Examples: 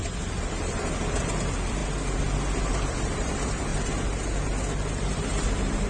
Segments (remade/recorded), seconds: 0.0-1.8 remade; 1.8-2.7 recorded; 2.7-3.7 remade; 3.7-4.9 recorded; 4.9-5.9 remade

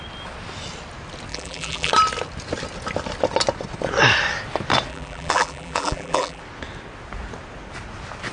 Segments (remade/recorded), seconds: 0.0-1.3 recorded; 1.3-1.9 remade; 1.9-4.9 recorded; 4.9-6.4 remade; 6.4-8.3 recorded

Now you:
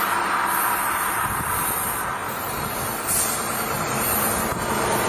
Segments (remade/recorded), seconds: 0.0-2.2 recorded; 2.2-4.6 remade; 4.6-5.1 recorded